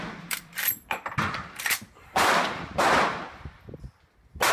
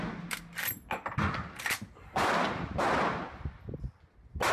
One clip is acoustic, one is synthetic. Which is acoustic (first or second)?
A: second